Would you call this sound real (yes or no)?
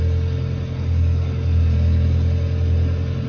yes